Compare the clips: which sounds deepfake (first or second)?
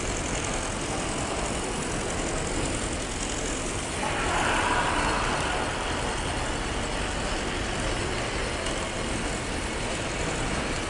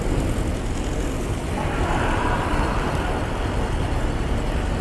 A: second